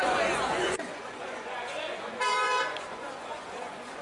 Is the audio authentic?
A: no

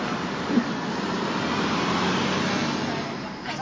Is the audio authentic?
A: yes